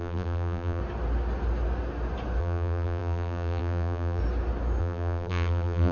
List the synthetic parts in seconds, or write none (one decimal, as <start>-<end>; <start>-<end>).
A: 0.0-0.8; 2.4-4.2; 4.8-5.9